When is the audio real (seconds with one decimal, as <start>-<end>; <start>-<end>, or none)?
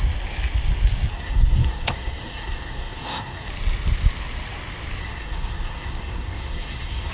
0.0-1.1; 3.5-5.0